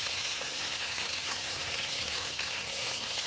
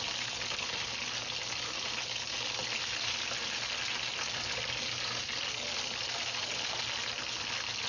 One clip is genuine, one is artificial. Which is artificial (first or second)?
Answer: first